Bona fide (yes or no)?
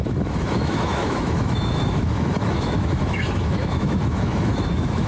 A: no